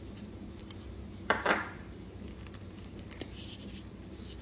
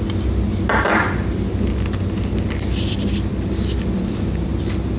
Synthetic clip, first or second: first